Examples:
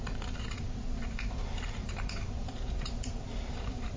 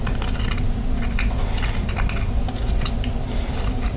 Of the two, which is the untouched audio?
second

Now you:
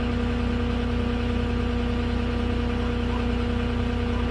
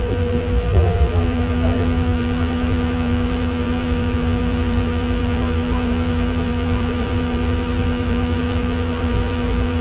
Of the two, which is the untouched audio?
first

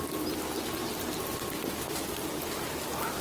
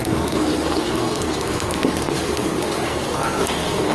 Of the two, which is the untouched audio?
first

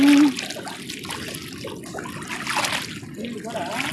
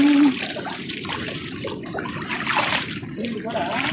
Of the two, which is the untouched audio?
first